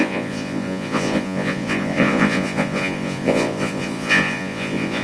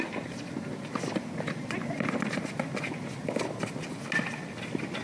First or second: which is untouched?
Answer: second